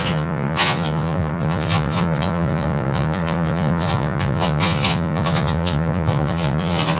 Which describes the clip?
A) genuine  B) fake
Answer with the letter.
B